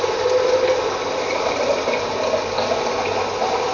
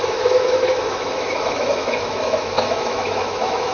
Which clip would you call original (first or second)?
first